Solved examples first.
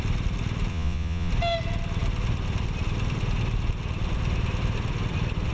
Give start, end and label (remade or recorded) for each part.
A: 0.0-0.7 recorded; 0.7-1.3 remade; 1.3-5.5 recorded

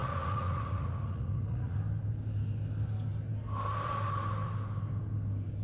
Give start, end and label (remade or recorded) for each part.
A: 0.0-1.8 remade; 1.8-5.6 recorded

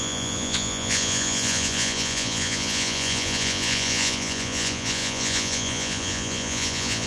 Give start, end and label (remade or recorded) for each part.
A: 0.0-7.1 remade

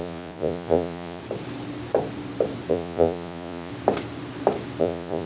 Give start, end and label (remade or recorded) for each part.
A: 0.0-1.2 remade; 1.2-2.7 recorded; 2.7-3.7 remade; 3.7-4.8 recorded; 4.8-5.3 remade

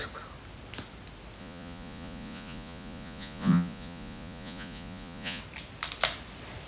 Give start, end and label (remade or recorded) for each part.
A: 0.0-1.4 recorded; 1.4-5.4 remade; 5.4-6.7 recorded

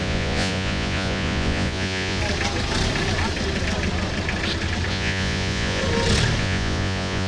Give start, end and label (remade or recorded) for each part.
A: 0.0-2.2 remade; 2.2-4.9 recorded; 4.9-5.8 remade; 5.8-6.4 recorded; 6.4-7.3 remade